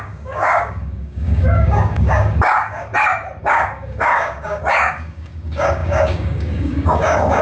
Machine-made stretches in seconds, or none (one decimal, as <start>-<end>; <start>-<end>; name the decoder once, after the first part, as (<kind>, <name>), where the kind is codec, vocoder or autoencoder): 0.0-2.9 (codec, DAC); 3.4-7.4